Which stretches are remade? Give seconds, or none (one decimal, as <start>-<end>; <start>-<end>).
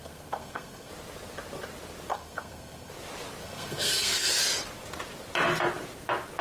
0.0-0.9; 2.1-2.9; 3.4-4.3